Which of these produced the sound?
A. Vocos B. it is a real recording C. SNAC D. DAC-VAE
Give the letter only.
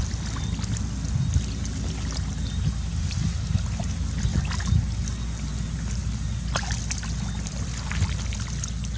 B